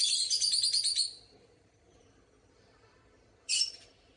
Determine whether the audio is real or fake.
fake